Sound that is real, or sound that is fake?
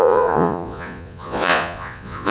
fake